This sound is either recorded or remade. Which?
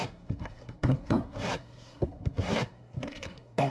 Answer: remade